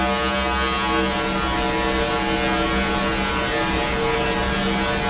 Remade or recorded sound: recorded